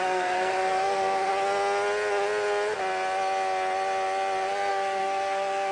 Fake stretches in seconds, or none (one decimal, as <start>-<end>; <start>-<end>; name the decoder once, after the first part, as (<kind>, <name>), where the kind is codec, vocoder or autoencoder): 0.0-1.3 (codec, SNAC); 4.7-5.7